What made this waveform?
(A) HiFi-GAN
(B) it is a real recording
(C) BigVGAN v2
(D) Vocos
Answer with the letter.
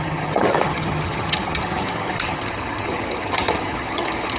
A